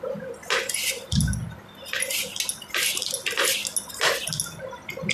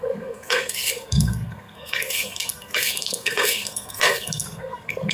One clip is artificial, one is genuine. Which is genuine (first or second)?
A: first